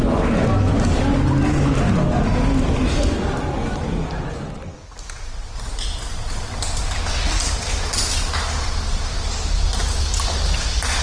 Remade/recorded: recorded